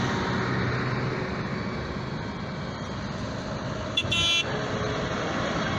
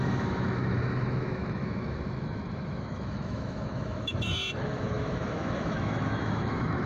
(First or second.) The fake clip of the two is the second